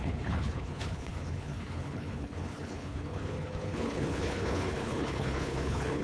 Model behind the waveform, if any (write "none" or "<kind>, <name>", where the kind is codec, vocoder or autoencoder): codec, HILCodec